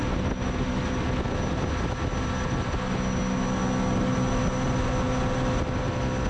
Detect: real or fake real